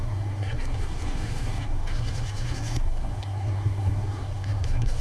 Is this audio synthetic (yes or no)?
yes